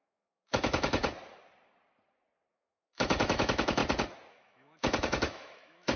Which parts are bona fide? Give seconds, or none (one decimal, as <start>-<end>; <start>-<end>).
1.0-2.5; 3.8-4.3

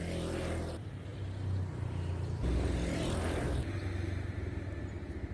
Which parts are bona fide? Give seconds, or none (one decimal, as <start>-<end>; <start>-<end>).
0.0-5.3

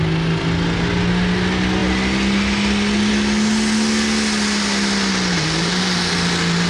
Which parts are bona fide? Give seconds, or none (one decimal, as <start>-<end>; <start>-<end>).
0.0-6.7

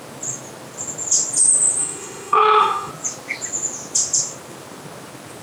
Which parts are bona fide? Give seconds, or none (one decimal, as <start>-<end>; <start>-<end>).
0.0-1.8; 2.9-5.4

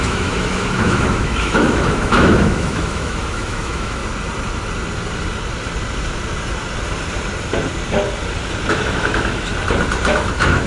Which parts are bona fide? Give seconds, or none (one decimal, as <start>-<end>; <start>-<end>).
4.0-8.7; 9.5-10.1